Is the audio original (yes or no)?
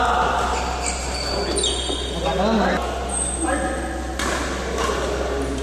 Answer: yes